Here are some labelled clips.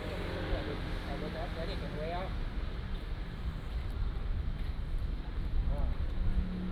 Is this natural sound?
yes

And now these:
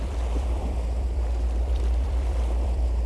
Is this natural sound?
no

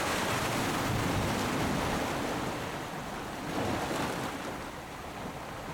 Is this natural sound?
yes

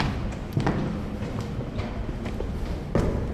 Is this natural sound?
yes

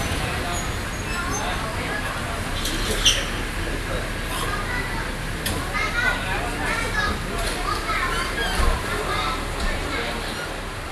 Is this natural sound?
yes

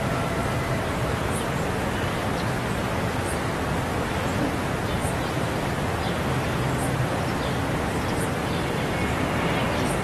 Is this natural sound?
no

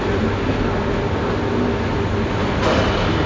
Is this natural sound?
yes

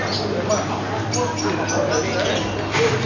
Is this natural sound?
yes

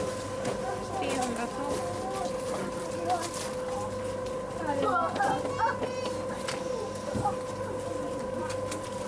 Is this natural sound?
yes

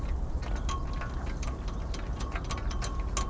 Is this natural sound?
yes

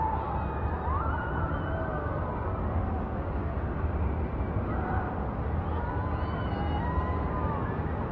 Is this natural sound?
yes